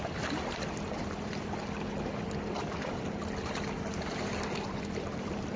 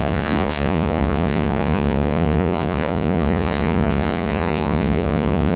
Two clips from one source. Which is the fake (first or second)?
second